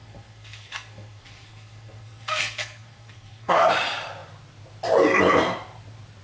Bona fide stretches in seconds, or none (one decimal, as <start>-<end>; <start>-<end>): 3.7-6.2